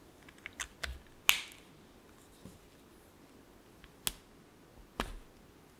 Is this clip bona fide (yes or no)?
yes